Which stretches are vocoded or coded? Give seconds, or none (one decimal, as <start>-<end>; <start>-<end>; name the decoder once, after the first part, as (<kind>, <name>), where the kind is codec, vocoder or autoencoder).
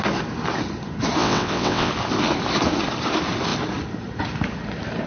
1.2-1.9 (vocoder, WaveNeXt)